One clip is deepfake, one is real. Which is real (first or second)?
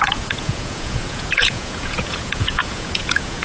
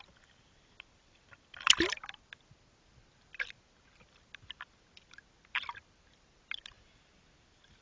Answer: second